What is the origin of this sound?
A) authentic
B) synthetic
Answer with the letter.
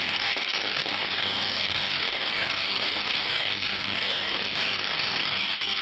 B